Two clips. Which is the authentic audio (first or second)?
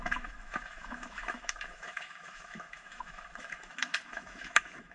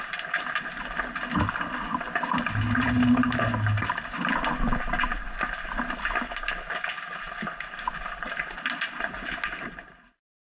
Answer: second